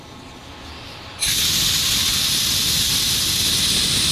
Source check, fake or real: real